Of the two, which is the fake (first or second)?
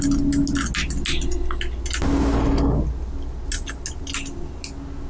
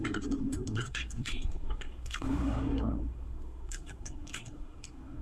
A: second